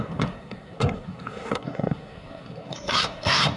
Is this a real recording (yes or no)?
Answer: no